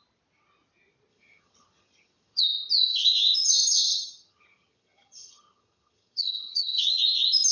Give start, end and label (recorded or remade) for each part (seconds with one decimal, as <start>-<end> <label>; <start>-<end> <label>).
0.0-1.1 recorded; 1.1-2.4 remade; 2.4-2.9 recorded; 2.9-7.0 remade; 7.0-7.5 recorded